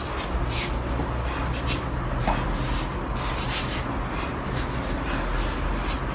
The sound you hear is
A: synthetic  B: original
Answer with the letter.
B